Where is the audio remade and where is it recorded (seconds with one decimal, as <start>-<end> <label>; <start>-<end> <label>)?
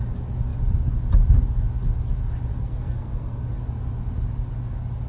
0.0-2.5 recorded; 2.5-3.4 remade; 3.4-5.1 recorded